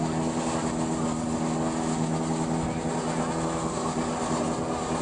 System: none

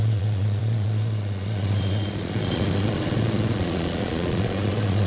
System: vocoder, Vocos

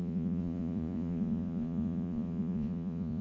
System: vocoder, Vocos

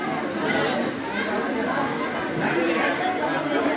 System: none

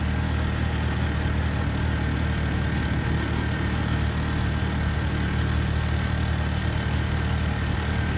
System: none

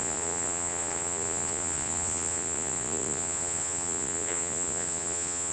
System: vocoder, Vocos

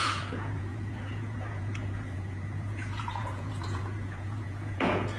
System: vocoder, Vocos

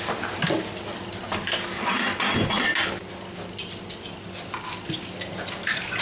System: none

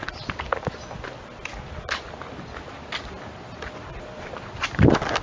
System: none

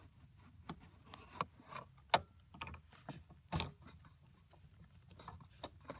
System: none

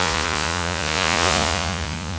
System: vocoder, Vocos